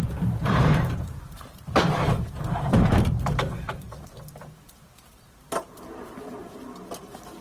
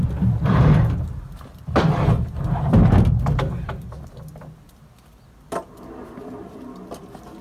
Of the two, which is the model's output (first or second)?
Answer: first